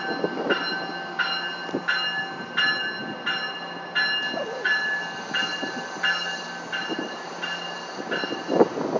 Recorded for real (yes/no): yes